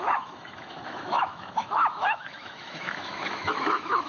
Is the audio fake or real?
fake